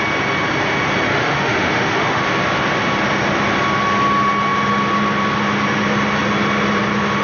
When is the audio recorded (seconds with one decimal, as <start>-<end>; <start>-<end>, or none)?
0.0-1.1; 2.2-7.2